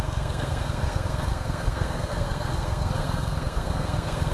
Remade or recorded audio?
remade